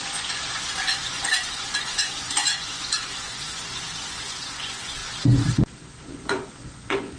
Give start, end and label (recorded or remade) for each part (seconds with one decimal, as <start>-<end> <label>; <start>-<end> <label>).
0.0-5.0 remade; 5.0-5.7 recorded; 5.7-7.2 remade